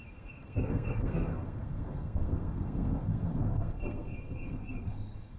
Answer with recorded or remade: remade